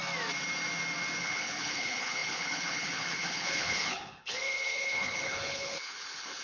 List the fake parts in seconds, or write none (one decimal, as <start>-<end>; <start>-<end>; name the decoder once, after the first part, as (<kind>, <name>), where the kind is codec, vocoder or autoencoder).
1.2-6.4 (codec, HILCodec)